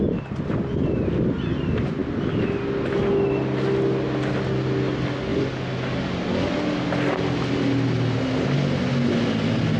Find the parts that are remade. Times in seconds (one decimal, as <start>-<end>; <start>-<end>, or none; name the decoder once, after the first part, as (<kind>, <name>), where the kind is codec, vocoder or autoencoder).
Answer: none